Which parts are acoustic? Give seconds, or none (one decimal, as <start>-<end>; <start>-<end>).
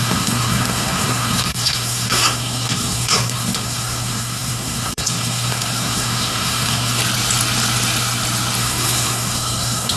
7.0-8.6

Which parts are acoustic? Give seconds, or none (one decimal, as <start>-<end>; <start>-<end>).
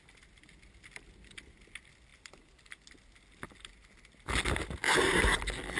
0.0-5.8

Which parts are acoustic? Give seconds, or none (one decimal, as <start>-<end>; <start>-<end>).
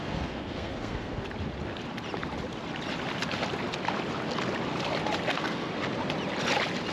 1.2-5.3; 5.7-6.9